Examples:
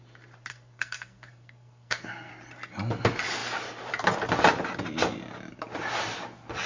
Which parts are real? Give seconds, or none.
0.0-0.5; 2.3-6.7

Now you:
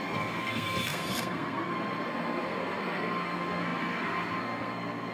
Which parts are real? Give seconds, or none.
none

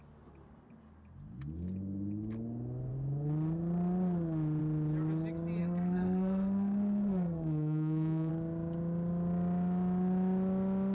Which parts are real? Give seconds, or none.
0.0-5.6; 8.3-10.9

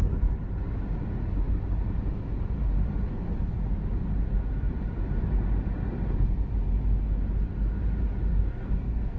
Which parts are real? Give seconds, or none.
0.0-8.3

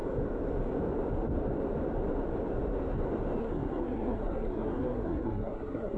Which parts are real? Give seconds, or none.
0.0-3.4